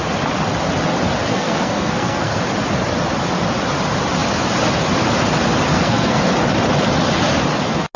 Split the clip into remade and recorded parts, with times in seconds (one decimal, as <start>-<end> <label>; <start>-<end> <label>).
0.0-1.3 recorded; 1.3-2.4 remade; 2.4-5.7 recorded; 5.7-6.2 remade; 6.2-8.0 recorded

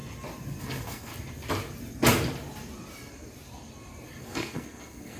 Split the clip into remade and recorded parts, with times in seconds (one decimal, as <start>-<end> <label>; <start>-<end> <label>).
0.0-0.6 recorded; 0.6-1.1 remade; 1.1-4.2 recorded; 4.2-5.2 remade

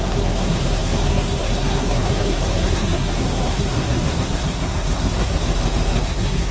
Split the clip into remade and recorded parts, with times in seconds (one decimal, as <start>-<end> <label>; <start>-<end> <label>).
0.0-5.4 remade; 5.4-6.0 recorded; 6.0-6.5 remade

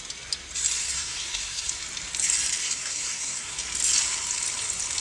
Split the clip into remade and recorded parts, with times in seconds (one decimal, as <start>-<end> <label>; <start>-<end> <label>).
0.0-0.8 recorded; 0.8-1.7 remade; 1.7-2.6 recorded; 2.6-3.6 remade; 3.6-5.0 recorded

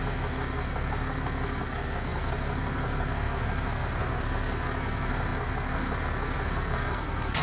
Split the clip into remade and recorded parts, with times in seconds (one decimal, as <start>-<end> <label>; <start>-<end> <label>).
0.0-7.4 remade